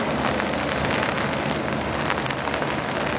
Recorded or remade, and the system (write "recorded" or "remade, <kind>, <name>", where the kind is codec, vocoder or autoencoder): recorded